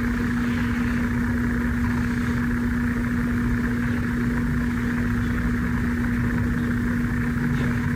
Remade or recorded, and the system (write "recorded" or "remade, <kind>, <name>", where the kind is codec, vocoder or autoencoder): recorded